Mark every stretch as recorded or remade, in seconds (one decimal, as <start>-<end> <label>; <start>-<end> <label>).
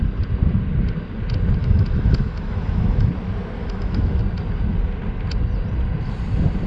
0.0-1.6 recorded; 1.6-3.1 remade; 3.1-3.6 recorded; 3.6-4.2 remade; 4.2-6.7 recorded